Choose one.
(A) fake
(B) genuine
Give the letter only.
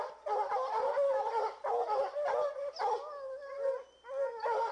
B